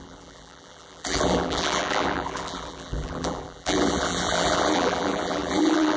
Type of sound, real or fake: fake